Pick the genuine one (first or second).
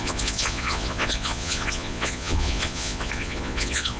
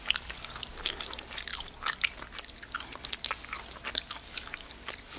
second